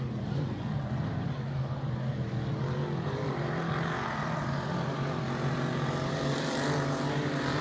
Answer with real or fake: real